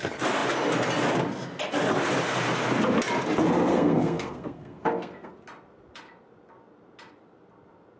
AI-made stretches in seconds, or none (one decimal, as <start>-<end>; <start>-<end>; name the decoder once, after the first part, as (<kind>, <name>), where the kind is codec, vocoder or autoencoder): 3.7-5.3 (codec, SNAC)